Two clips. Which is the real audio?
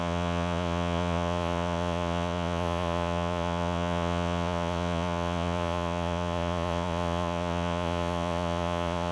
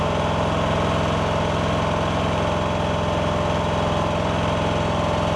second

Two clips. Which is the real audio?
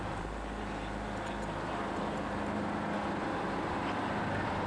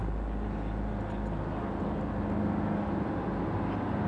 second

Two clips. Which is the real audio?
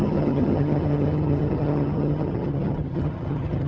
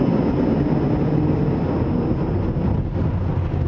second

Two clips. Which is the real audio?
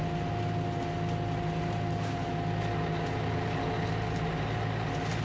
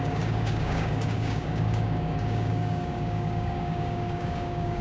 first